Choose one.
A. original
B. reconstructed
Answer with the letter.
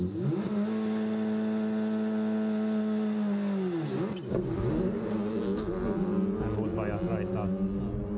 A